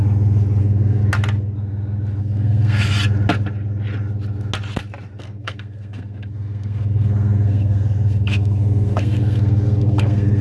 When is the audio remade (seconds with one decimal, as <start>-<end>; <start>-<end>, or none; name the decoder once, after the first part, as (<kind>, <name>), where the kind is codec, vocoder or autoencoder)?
0.6-1.0 (codec, SNAC); 2.2-2.9; 5.2-10.4